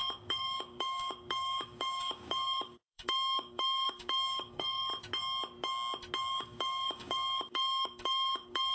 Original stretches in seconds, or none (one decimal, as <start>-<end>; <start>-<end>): 4.9-6.3